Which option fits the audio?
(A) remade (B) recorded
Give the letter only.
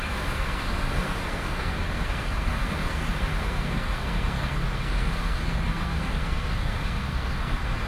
A